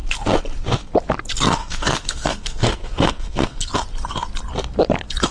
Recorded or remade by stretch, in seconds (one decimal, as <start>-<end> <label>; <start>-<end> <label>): 0.0-1.6 recorded; 1.6-3.7 remade; 3.7-5.3 recorded